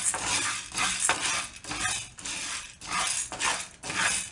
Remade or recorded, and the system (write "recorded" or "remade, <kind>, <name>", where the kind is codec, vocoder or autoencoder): recorded